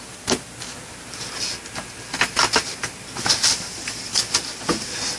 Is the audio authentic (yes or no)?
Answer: yes